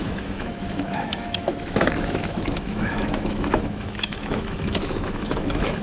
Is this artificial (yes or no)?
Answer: yes